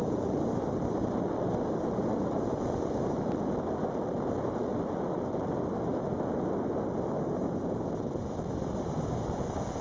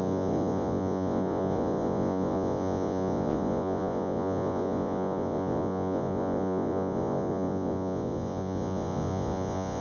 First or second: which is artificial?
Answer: second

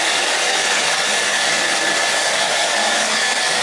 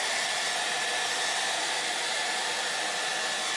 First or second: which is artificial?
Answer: first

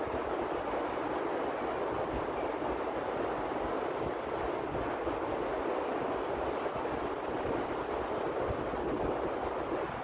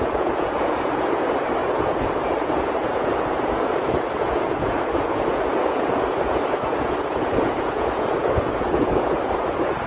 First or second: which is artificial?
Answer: second